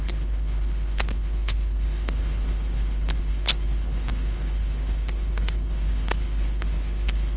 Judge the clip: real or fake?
fake